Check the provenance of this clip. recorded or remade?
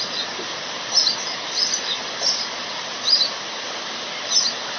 recorded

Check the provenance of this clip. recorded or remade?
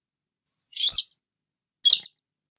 recorded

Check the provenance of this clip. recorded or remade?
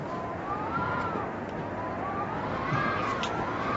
recorded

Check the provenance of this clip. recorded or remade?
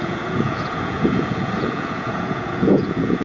remade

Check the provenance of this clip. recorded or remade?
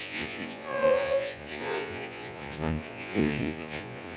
remade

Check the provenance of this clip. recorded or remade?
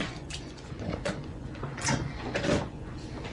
remade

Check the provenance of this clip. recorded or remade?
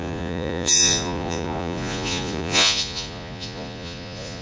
remade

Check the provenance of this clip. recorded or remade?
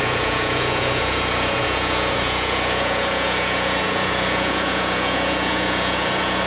remade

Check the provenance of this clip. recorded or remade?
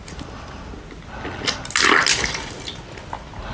recorded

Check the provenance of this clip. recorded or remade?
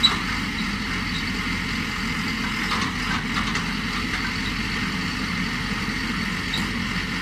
recorded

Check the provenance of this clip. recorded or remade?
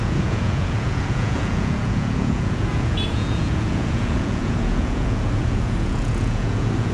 remade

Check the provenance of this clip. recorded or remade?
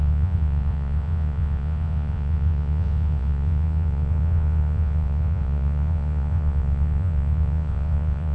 remade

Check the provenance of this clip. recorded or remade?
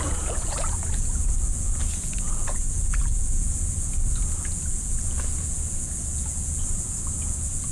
remade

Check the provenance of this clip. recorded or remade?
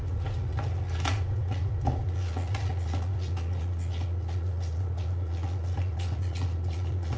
remade